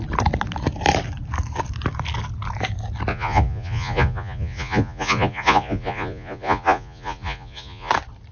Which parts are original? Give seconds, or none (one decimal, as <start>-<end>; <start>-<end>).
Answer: 0.0-3.1; 7.9-8.3